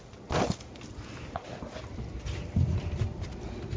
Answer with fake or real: real